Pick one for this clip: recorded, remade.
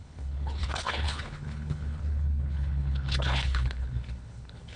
remade